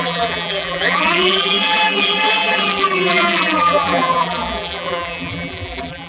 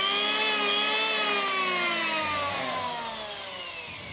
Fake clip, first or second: first